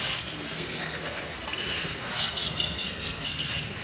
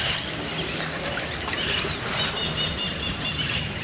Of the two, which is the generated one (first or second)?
first